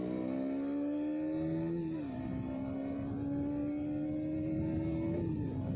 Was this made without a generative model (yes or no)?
yes